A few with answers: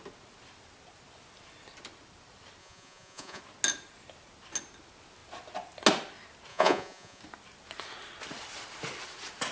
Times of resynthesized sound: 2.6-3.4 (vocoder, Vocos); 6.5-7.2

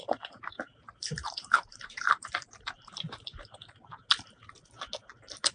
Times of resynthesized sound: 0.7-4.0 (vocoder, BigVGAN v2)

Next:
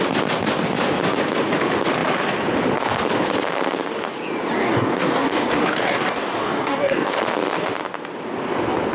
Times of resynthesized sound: 4.6-7.2 (codec, DAC)

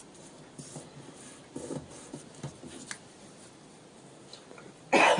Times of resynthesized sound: none

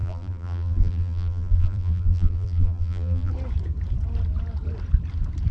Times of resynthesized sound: 0.0-3.3 (vocoder, BigVGAN v2)